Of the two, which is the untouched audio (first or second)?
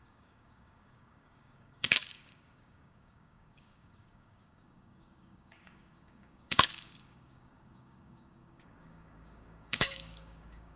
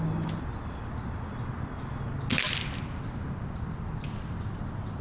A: second